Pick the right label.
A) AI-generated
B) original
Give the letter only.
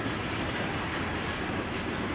B